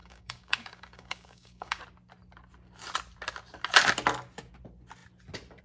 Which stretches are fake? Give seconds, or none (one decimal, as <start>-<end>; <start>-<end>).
0.0-1.8